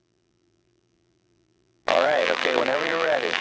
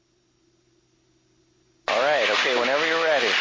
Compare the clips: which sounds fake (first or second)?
first